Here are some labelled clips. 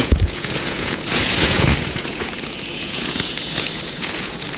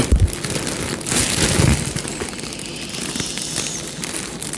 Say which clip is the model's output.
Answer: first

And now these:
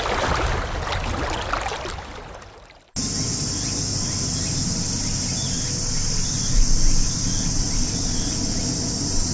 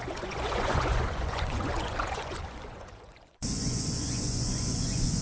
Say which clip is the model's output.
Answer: second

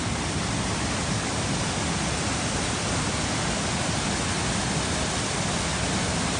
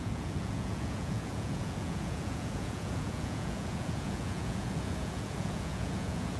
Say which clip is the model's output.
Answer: second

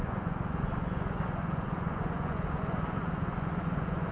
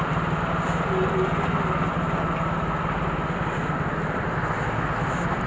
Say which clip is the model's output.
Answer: first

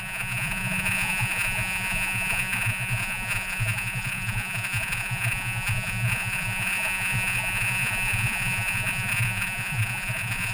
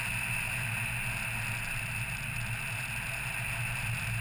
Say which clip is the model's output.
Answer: first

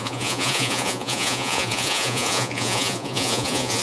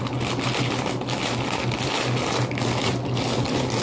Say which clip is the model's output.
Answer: first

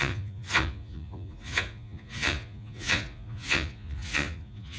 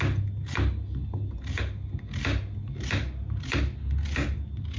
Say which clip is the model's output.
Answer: first